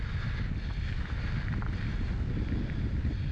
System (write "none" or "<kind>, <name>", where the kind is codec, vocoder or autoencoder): none